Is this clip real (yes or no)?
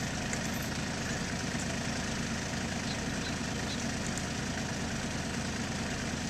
yes